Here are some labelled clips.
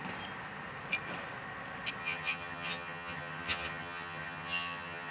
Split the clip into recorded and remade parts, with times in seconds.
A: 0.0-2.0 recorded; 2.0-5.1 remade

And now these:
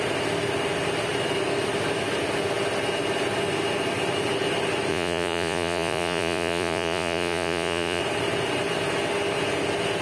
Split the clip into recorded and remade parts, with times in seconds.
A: 0.0-4.9 recorded; 4.9-8.0 remade; 8.0-10.0 recorded

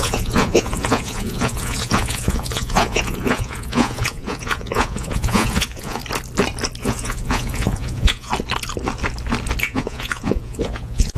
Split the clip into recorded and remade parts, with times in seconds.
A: 0.0-6.0 remade; 6.0-6.8 recorded; 6.8-8.3 remade; 8.3-9.6 recorded; 9.6-11.2 remade